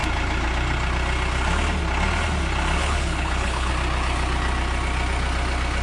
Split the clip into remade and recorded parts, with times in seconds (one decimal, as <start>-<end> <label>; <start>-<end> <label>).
0.0-2.8 recorded; 2.8-3.7 remade; 3.7-5.8 recorded

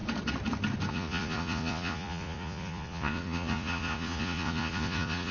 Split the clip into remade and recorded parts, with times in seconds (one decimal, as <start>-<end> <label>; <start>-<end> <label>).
0.0-0.9 recorded; 0.9-5.3 remade

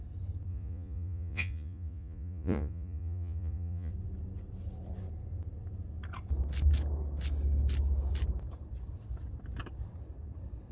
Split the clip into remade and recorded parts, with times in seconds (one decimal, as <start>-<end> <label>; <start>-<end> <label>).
0.0-0.5 recorded; 0.5-3.9 remade; 3.9-10.7 recorded

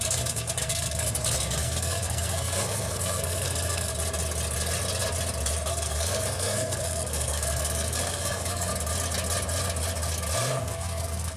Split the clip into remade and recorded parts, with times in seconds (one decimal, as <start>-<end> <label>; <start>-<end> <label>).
0.0-3.9 remade; 3.9-5.7 recorded; 5.7-8.7 remade; 8.7-10.6 recorded; 10.6-11.4 remade

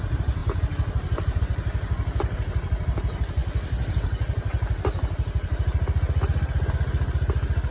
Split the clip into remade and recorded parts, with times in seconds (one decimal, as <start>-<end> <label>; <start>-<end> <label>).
0.0-7.7 recorded

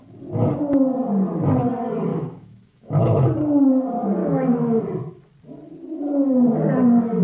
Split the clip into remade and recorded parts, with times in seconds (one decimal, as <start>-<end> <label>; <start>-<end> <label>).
0.0-2.1 recorded; 2.1-3.3 remade; 3.3-4.2 recorded; 4.2-4.8 remade; 4.8-7.2 recorded

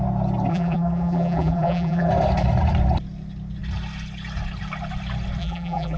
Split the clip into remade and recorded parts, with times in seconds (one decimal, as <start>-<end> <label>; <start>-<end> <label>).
0.0-0.5 recorded; 0.5-2.1 remade; 2.1-5.4 recorded; 5.4-6.0 remade

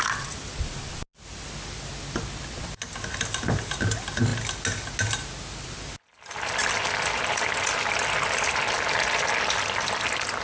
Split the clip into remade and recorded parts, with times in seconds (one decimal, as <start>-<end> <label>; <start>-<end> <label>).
0.0-10.4 recorded